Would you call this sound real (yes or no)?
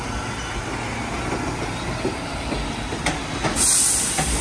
yes